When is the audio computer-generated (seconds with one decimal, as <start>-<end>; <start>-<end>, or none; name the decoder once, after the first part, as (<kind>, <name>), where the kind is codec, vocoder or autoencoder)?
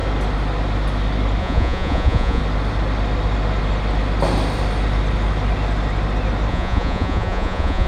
1.4-2.4 (vocoder, Vocos); 6.5-7.9